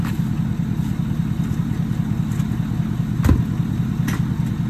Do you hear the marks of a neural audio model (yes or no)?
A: no